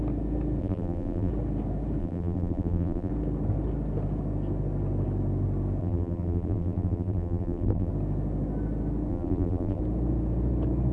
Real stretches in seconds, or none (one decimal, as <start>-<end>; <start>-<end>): 0.0-0.6; 1.3-2.0; 3.1-5.8; 7.9-9.1; 9.8-10.9